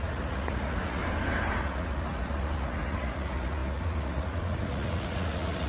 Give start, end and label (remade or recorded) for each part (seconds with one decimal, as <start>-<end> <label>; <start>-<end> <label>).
0.0-1.0 remade; 1.0-1.6 recorded; 1.6-5.7 remade